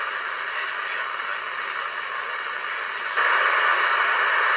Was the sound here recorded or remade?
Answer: recorded